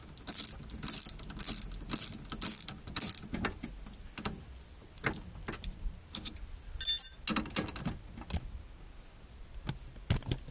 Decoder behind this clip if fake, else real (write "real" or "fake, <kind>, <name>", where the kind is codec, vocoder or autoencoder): real